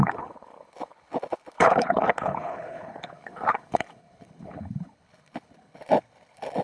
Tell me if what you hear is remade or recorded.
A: remade